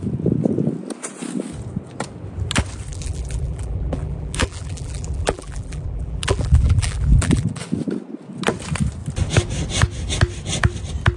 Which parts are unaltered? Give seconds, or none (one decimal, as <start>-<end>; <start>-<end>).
0.0-2.9; 7.6-11.2